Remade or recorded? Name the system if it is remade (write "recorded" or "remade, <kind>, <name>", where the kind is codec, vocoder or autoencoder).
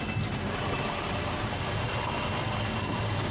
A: remade, vocoder, BigVGAN v2